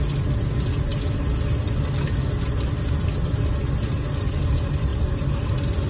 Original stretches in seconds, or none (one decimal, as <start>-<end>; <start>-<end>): 0.0-5.9